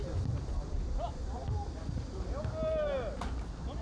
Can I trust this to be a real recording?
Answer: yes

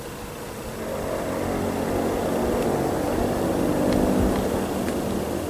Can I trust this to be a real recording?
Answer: yes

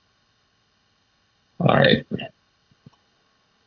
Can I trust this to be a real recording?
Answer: no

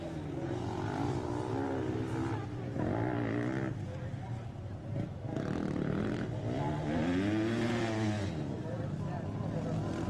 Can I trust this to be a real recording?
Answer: yes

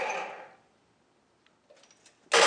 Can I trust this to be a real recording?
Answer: yes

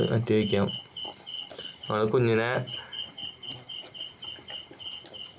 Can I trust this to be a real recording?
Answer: yes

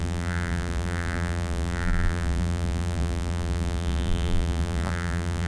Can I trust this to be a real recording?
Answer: no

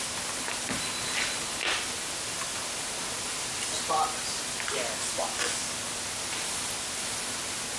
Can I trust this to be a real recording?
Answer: yes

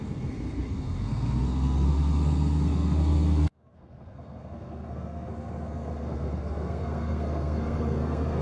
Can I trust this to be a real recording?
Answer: no